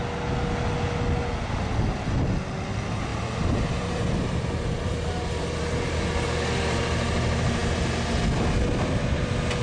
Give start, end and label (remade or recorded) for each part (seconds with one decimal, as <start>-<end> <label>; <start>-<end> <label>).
0.0-3.1 recorded; 3.1-4.4 remade; 4.4-9.6 recorded